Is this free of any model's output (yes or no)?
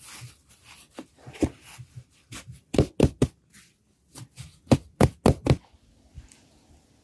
yes